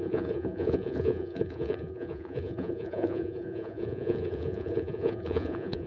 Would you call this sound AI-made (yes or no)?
yes